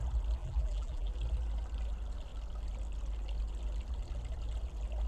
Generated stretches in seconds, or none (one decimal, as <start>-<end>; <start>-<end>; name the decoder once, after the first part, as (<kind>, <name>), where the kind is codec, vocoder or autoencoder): 0.4-1.1 (vocoder, BigVGAN v2)